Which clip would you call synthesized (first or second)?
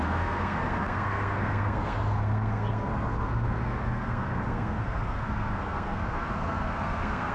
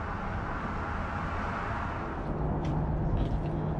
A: first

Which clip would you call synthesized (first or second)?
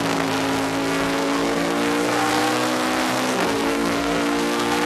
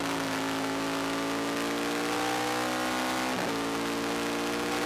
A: first